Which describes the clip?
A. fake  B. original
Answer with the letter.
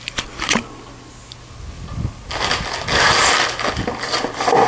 B